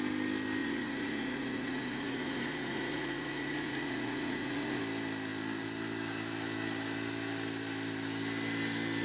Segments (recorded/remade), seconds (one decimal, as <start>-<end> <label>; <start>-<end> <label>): 0.0-0.6 recorded; 0.6-4.8 remade; 4.8-9.0 recorded